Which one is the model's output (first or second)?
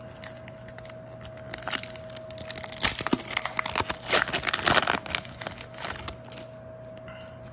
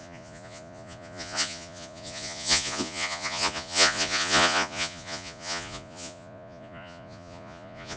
second